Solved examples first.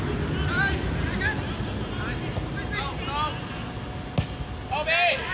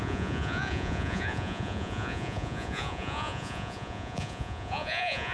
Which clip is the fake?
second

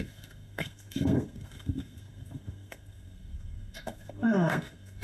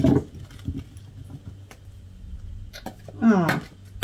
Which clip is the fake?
first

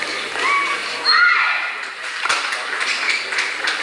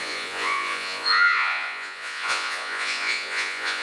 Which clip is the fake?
second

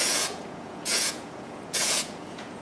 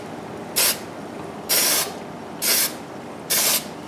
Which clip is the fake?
first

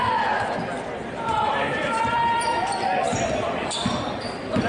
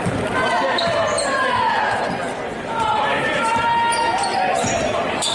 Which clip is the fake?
first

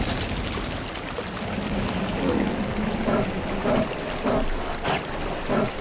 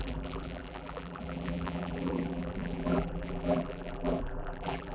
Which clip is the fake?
second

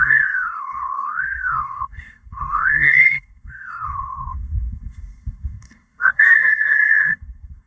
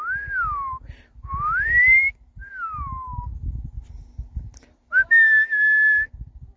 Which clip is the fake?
first